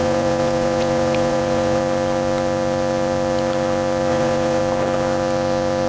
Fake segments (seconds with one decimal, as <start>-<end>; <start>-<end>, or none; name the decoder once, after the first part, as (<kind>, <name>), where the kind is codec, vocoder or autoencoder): 0.0-1.8 (vocoder, Vocos); 4.1-4.6